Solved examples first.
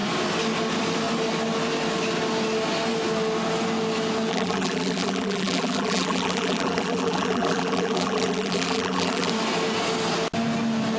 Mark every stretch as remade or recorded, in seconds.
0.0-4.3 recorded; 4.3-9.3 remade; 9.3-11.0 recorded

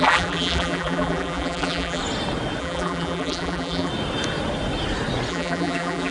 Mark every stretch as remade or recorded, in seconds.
0.0-2.0 remade; 2.0-2.6 recorded; 2.6-3.9 remade; 3.9-5.3 recorded; 5.3-6.1 remade

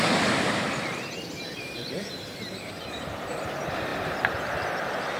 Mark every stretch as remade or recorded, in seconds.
0.0-5.2 remade

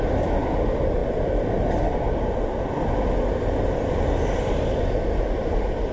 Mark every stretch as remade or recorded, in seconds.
0.0-5.9 recorded

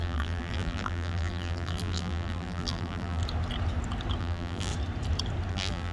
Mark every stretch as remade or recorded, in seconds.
0.0-3.2 remade; 3.2-4.2 recorded; 4.2-4.7 remade; 4.7-5.5 recorded; 5.5-5.9 remade